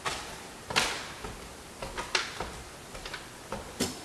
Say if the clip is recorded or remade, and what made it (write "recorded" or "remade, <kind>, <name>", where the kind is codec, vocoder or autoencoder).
recorded